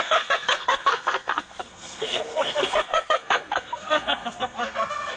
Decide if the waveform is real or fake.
fake